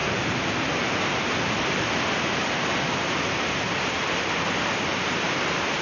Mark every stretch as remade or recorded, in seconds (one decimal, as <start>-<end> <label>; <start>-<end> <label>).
0.0-5.8 remade